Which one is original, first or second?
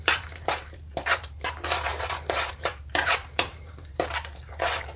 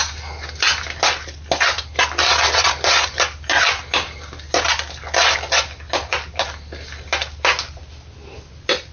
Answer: second